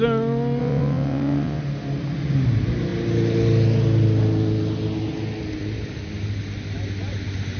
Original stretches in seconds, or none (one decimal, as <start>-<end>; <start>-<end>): 0.0-0.6; 1.6-7.6